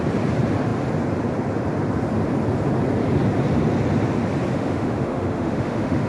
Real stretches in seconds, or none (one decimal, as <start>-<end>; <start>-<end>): 0.0-4.5